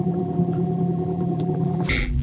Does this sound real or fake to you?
fake